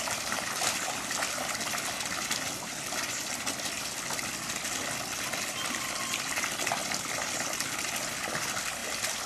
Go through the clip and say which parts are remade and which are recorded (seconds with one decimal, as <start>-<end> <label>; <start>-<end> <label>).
0.0-9.3 recorded